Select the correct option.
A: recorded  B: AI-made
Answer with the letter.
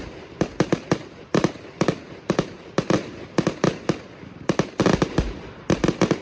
A